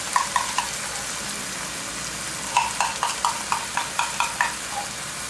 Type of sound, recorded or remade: recorded